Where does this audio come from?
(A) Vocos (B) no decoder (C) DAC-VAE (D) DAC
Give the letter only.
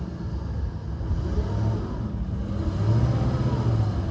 B